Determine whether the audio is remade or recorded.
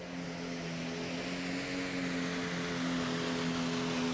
recorded